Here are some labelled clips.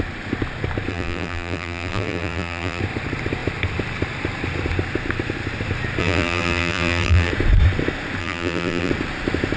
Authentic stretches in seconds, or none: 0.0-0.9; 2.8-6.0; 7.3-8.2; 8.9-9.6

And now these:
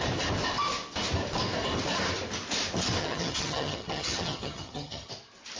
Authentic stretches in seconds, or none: 0.0-3.0; 5.1-5.6

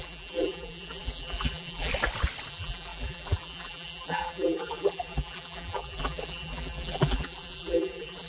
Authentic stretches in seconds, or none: 1.9-2.5

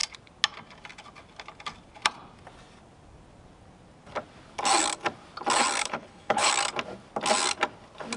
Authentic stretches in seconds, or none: 0.0-5.8; 6.5-8.2

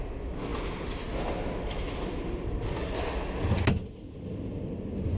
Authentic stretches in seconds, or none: 0.0-5.2

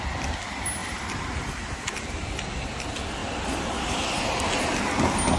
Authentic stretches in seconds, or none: 0.0-0.8; 2.3-3.2; 3.9-5.4

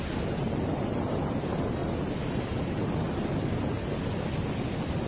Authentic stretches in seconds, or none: 0.0-5.1